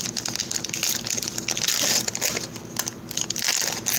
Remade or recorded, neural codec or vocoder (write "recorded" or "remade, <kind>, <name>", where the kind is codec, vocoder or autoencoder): recorded